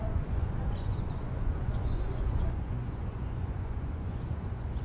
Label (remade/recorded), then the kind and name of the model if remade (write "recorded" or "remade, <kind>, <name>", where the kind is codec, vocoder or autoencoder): remade, vocoder, Vocos